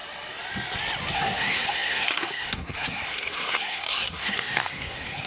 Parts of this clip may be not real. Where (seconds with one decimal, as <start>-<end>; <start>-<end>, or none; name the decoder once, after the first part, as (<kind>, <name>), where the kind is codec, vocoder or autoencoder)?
1.1-5.3 (codec, SNAC)